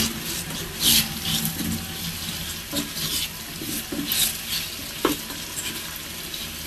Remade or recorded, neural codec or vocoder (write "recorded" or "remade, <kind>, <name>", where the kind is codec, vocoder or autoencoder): recorded